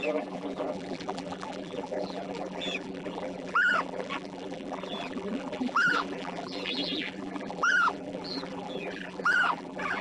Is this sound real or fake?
fake